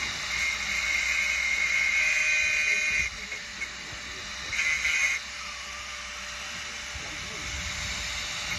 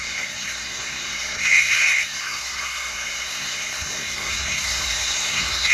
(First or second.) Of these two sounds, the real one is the first